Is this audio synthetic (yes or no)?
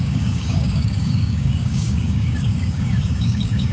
yes